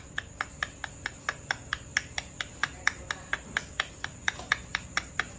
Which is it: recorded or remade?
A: recorded